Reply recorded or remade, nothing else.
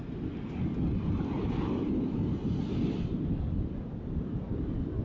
recorded